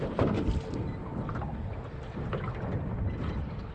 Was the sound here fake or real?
real